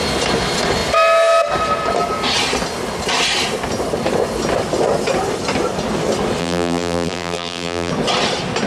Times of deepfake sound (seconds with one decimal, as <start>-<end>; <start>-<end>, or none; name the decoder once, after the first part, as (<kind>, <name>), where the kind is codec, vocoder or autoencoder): 6.4-7.9 (vocoder, BigVGAN v2)